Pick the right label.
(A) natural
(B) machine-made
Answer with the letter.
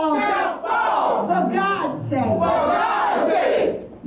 A